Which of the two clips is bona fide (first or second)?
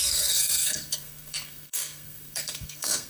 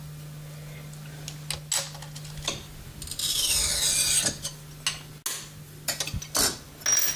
second